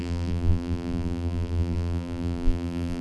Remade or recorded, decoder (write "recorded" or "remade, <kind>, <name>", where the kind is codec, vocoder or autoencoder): remade, vocoder, BigVGAN v2